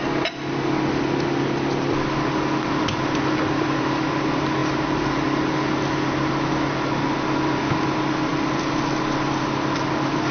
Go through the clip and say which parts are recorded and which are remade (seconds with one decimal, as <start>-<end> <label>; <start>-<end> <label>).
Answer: 0.0-10.3 recorded